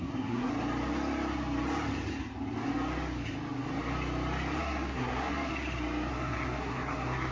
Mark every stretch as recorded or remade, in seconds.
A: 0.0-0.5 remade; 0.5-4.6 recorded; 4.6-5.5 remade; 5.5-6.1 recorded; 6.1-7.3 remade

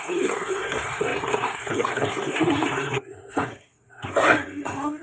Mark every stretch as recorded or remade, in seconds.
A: 0.0-5.0 remade